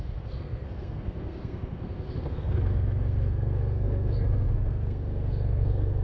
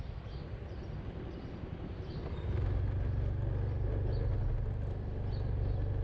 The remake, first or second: first